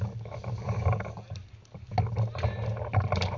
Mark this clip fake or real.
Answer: real